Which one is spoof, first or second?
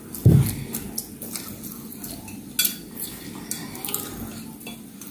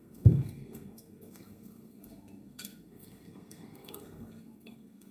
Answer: second